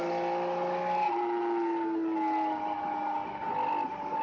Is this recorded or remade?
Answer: recorded